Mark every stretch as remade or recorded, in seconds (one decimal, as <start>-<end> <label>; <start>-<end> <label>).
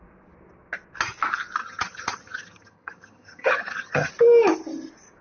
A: 0.0-1.6 recorded; 1.6-4.1 remade; 4.1-5.2 recorded